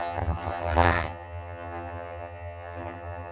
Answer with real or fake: fake